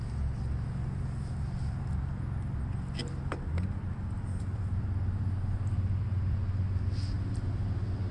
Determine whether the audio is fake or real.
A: real